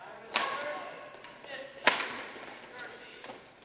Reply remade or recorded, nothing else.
recorded